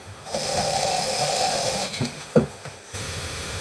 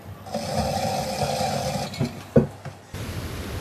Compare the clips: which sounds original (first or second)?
second